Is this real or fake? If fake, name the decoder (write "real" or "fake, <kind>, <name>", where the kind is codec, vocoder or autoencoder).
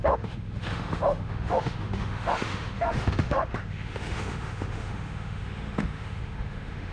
fake, autoencoder, DAC-VAE